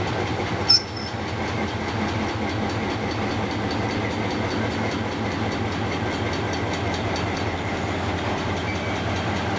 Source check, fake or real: real